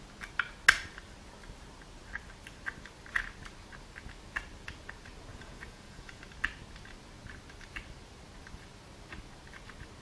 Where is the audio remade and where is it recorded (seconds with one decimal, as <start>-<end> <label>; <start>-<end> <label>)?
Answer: 0.0-5.3 recorded; 5.3-6.2 remade; 6.2-10.0 recorded